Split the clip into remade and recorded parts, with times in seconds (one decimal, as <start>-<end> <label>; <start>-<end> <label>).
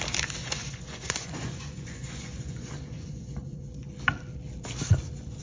0.0-0.4 recorded; 0.4-3.6 remade; 3.6-5.4 recorded